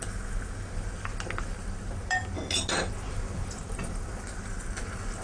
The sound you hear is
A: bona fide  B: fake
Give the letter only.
A